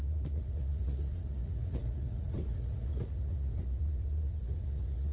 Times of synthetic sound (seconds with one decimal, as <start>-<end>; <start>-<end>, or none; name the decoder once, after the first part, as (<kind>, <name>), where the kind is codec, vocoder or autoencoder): 0.0-5.1 (vocoder, Vocos)